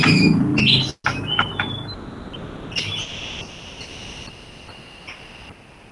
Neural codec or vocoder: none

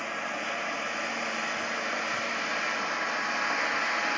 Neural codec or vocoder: none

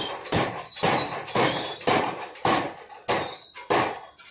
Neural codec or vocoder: none